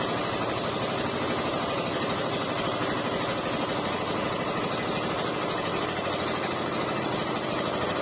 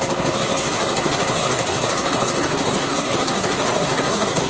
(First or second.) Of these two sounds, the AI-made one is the second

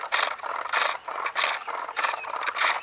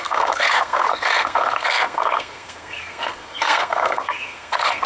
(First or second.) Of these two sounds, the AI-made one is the second